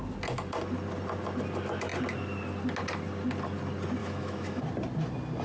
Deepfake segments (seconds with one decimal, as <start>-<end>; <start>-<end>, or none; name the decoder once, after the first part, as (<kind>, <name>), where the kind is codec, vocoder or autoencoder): 4.0-4.6 (autoencoder, DAC-VAE)